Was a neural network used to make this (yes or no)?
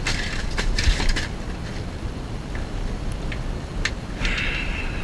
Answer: no